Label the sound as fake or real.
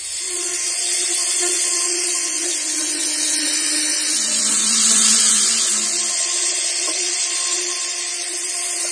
fake